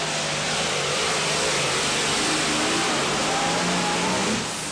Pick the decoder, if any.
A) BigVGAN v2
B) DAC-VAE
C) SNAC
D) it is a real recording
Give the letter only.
D